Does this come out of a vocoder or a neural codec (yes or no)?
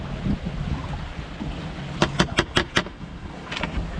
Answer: no